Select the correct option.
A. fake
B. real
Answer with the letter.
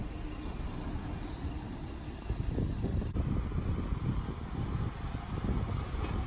B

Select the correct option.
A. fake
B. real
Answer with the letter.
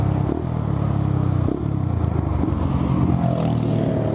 B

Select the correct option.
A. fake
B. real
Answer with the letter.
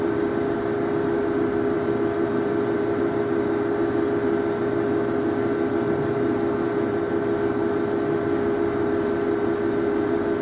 B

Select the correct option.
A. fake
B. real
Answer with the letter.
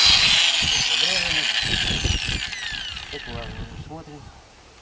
B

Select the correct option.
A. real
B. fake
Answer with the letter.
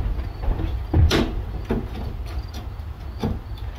A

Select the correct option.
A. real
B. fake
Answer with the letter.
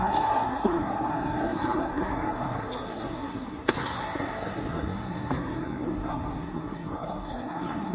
B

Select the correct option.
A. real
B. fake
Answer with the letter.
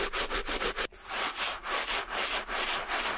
A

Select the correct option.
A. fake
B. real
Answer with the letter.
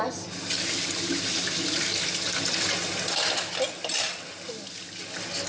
B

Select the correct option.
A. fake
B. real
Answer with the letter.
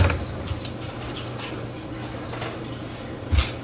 B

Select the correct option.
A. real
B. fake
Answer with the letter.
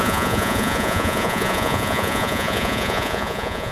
B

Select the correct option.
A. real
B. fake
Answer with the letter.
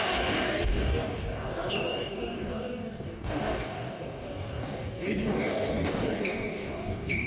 B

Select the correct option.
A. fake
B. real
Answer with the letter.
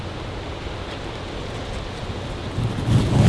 B